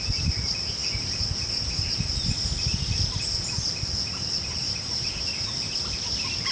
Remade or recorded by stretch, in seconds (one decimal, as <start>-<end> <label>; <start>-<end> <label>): 0.0-6.5 recorded